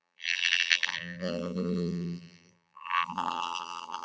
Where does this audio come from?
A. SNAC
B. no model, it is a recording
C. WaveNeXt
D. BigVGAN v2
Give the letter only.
D